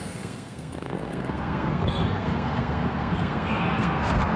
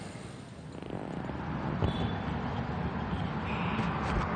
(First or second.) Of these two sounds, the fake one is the first